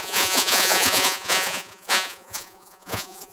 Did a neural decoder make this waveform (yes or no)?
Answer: yes